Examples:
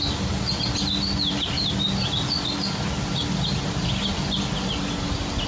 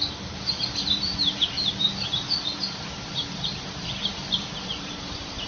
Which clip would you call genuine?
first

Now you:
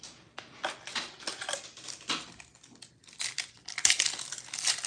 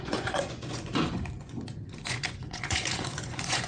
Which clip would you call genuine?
first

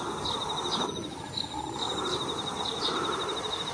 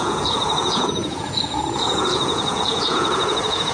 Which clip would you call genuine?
first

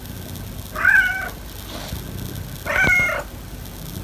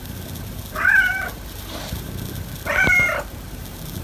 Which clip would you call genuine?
first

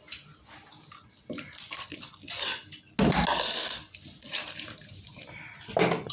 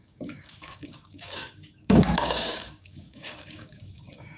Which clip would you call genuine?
first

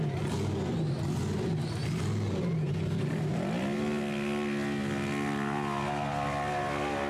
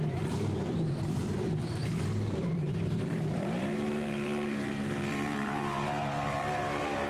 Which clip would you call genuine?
first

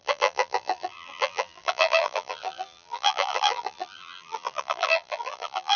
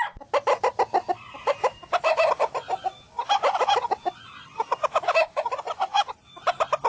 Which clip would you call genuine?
second